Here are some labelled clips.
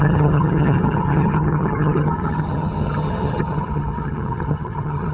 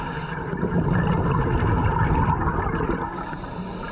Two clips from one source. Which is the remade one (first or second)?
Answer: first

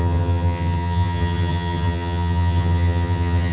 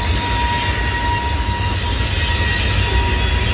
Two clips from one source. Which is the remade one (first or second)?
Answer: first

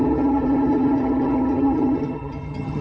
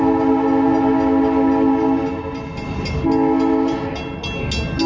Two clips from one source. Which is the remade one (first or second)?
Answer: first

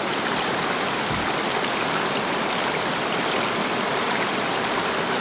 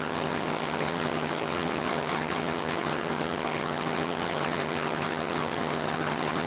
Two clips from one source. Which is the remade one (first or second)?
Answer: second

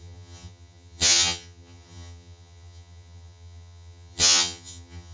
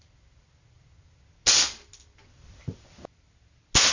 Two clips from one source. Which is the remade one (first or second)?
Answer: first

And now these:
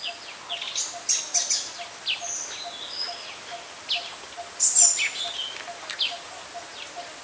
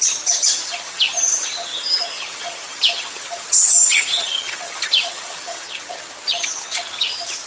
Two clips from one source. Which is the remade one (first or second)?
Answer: second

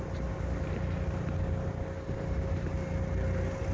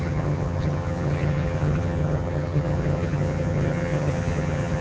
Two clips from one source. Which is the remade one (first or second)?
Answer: second